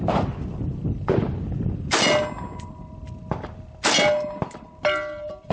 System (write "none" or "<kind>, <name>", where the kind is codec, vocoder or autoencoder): none